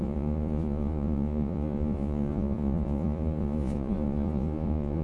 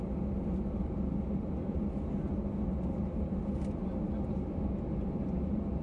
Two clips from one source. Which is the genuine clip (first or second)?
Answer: second